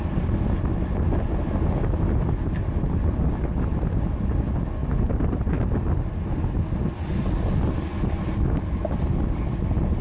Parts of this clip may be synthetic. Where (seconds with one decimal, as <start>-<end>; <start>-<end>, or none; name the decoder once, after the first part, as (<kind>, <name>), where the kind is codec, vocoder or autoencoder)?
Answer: none